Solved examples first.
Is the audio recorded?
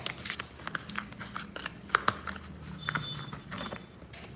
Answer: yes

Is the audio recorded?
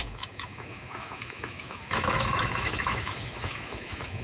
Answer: no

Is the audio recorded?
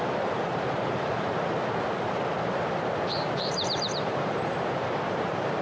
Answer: no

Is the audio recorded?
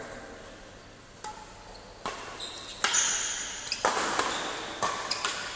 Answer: yes